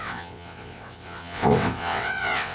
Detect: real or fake fake